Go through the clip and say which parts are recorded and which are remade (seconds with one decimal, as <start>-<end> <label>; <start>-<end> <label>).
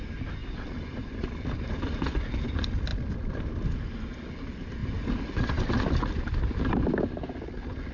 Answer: 0.0-0.4 recorded; 0.4-1.8 remade; 1.8-2.9 recorded; 2.9-3.7 remade; 3.7-7.9 recorded